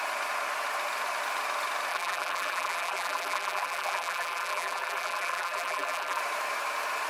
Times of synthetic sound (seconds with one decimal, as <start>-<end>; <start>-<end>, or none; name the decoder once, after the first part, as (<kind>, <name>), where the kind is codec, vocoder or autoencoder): 1.9-6.2 (vocoder, BigVGAN v2)

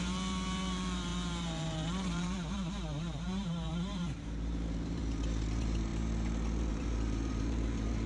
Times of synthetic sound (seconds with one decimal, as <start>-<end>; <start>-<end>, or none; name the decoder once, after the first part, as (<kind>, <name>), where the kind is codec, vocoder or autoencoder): 0.0-8.1 (vocoder, BigVGAN v2)

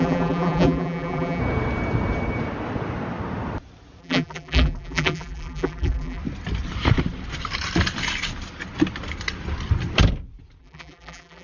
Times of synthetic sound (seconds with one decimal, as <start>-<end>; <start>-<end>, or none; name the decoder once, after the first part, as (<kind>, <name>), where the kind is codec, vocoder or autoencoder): 0.0-1.4 (vocoder, BigVGAN v2); 4.0-6.2; 10.6-11.4

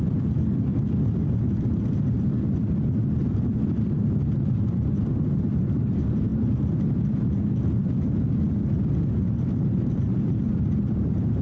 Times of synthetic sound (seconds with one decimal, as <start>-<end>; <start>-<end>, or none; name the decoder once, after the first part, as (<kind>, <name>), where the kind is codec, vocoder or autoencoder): 0.0-0.7 (vocoder, BigVGAN v2); 3.2-6.3; 9.0-11.4

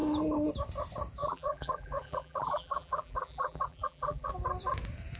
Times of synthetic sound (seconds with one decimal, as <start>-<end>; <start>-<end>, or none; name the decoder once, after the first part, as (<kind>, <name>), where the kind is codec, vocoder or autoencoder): 1.2-4.3 (vocoder, BigVGAN v2)